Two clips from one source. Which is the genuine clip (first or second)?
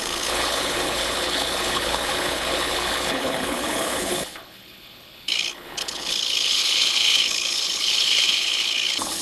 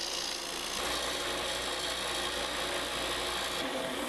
second